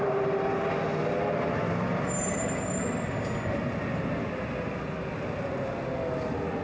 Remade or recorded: recorded